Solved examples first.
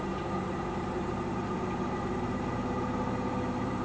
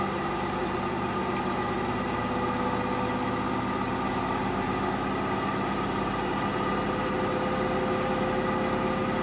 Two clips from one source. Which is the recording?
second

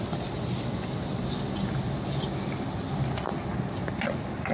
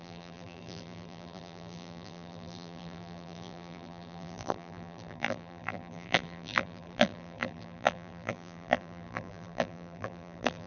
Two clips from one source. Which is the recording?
first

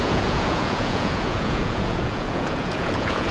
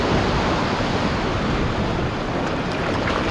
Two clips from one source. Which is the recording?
second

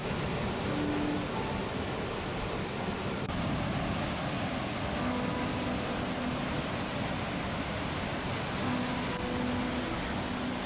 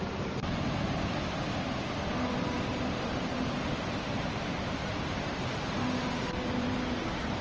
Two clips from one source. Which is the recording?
first